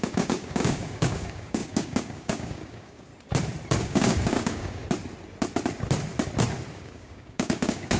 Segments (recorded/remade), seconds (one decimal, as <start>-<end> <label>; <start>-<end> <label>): 0.0-3.1 remade; 3.1-3.8 recorded; 3.8-4.8 remade; 4.8-6.7 recorded; 6.7-8.0 remade